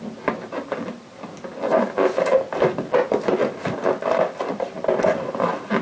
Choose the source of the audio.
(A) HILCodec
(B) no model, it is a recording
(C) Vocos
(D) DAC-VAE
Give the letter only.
B